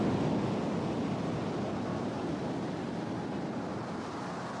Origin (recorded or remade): recorded